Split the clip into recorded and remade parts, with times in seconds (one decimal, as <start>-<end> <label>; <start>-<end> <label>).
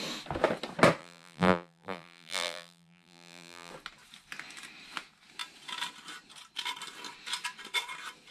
0.0-1.0 recorded; 1.0-3.7 remade; 3.7-8.3 recorded